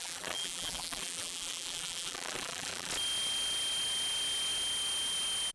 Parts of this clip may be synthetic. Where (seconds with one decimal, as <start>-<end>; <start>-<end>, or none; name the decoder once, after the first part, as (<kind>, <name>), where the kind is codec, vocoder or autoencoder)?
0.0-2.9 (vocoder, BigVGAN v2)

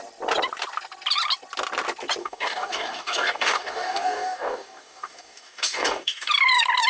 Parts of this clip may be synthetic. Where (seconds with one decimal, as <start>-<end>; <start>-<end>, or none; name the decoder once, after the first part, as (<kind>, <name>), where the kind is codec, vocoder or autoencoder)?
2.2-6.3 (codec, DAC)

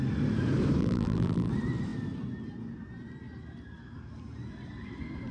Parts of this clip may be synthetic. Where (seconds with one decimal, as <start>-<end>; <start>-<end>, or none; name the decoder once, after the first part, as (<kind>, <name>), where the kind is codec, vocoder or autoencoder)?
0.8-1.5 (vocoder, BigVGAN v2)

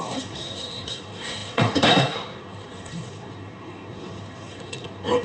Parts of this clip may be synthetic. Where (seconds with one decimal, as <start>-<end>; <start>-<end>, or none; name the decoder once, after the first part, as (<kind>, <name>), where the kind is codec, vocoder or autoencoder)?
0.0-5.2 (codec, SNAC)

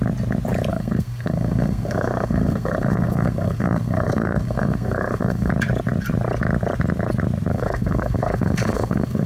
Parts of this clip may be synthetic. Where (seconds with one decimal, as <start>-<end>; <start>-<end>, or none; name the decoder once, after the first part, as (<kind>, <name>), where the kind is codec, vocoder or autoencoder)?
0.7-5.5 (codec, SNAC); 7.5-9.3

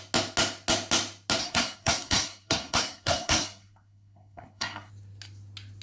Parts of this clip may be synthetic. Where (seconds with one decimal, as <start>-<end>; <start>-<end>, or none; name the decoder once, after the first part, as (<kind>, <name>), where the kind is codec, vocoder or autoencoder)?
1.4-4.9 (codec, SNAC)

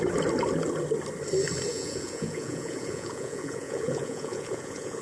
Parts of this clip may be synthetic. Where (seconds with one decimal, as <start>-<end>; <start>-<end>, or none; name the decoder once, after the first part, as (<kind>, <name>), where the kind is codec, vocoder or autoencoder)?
1.7-5.0 (vocoder, Vocos)